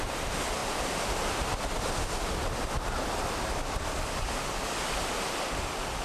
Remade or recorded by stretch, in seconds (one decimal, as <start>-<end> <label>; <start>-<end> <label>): 0.0-6.0 recorded